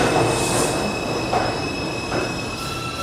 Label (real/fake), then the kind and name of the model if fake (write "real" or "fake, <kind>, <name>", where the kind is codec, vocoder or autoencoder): real